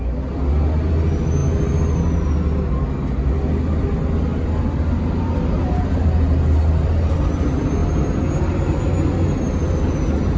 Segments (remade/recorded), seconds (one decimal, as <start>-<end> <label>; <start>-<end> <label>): 0.0-10.4 recorded